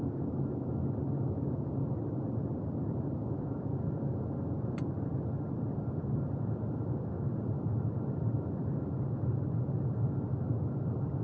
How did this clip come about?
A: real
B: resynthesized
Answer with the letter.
A